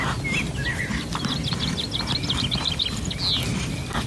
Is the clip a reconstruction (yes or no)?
no